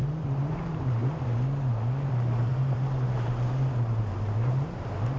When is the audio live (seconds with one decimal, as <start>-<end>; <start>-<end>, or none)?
0.0-0.5; 1.0-2.1